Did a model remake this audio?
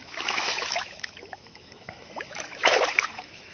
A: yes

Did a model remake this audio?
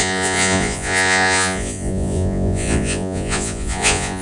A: yes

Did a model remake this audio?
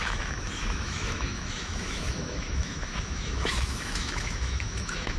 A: yes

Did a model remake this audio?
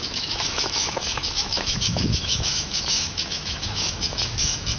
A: yes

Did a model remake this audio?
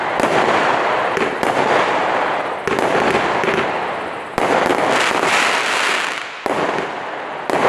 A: no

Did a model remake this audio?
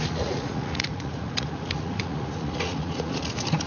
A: yes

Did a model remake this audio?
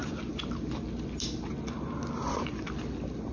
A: no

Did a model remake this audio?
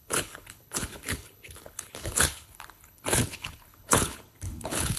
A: yes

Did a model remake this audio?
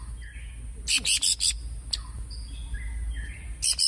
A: no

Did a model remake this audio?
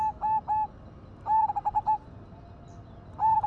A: no